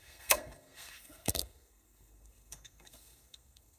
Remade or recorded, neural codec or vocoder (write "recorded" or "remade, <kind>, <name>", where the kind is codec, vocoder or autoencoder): remade, codec, SNAC